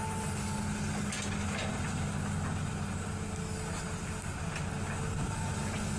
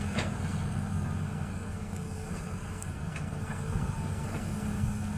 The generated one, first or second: second